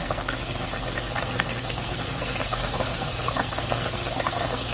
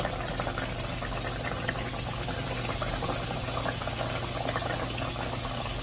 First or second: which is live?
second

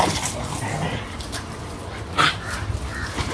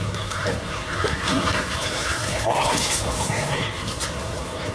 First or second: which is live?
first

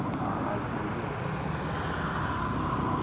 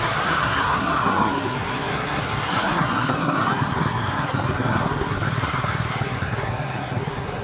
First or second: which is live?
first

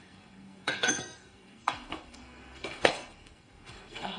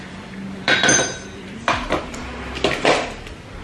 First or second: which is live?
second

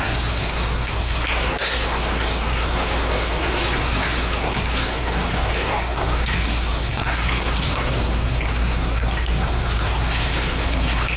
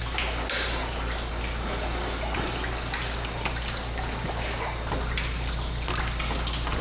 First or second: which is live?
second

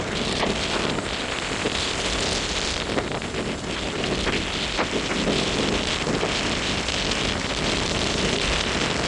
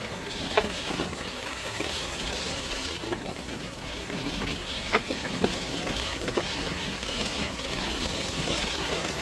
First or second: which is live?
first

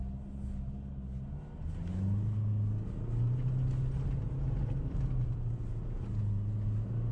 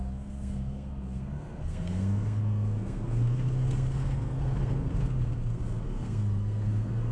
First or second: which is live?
first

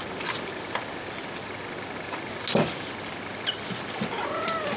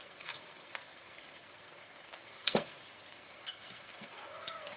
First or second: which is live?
first